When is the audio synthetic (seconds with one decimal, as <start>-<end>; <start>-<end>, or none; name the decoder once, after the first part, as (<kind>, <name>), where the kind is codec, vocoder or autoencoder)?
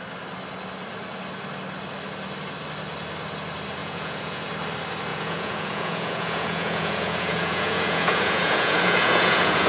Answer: 3.8-4.5 (vocoder, Vocos); 5.1-9.7